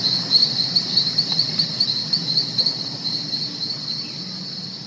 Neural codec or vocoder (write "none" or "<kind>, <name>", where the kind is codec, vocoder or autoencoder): none